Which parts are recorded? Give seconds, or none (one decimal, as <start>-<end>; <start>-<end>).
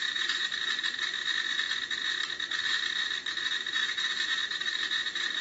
0.8-3.4